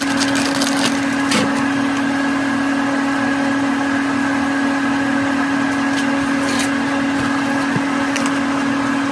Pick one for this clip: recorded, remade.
recorded